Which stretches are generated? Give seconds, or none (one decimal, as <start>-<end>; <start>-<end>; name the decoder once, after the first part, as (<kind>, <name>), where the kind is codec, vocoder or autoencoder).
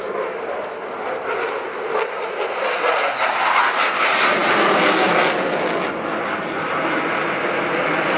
none